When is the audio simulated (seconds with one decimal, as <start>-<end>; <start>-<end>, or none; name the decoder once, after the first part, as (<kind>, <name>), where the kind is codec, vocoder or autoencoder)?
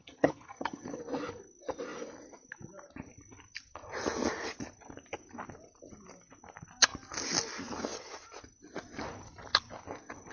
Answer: 0.0-1.0 (vocoder, HiFi-GAN)